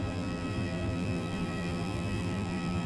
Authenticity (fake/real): fake